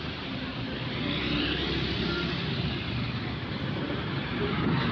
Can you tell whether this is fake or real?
fake